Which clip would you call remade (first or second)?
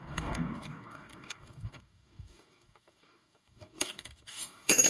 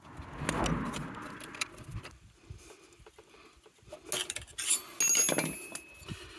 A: first